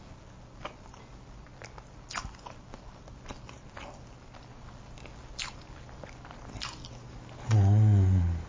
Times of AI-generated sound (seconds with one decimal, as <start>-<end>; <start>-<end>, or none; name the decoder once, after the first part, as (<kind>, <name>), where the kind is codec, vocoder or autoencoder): none